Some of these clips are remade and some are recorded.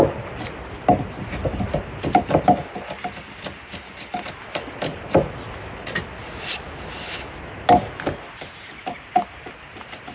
recorded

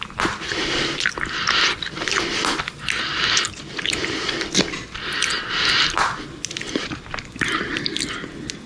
recorded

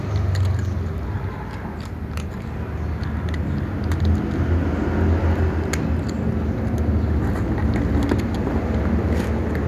recorded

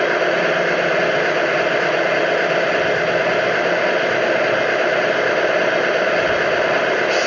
recorded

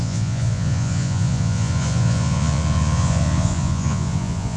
remade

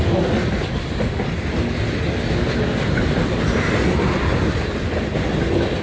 recorded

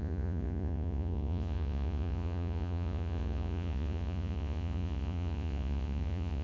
remade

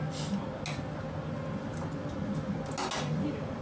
recorded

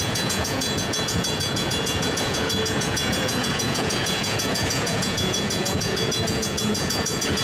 remade